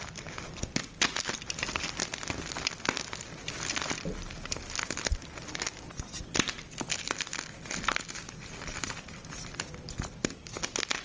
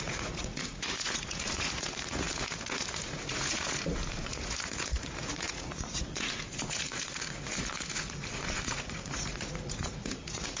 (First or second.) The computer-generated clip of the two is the second